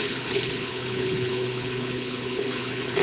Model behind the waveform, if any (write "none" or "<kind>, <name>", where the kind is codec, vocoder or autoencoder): codec, HILCodec